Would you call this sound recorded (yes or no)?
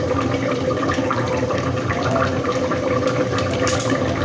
no